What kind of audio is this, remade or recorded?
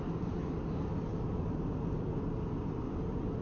recorded